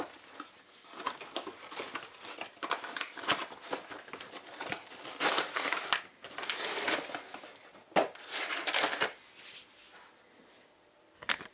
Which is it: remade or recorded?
recorded